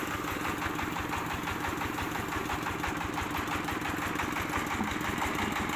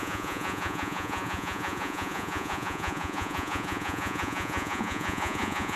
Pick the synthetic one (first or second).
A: second